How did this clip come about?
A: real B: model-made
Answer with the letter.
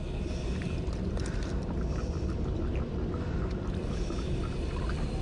A